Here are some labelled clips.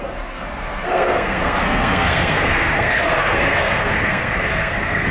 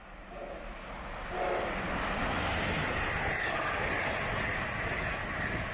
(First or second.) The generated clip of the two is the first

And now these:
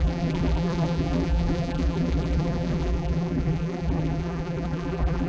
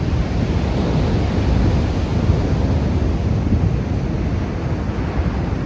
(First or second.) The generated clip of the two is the first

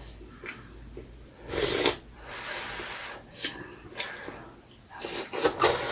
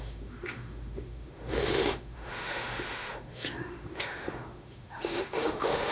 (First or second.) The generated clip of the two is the second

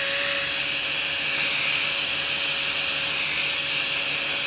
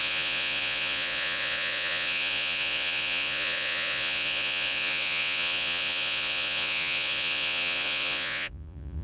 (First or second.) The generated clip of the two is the second